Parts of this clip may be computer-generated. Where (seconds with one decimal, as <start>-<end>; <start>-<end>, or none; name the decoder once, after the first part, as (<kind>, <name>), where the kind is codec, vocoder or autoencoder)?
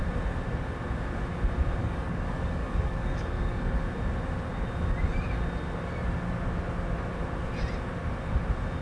1.8-3.8 (codec, DAC)